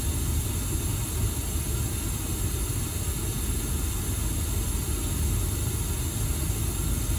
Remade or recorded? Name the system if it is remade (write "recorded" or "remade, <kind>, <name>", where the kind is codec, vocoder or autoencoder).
recorded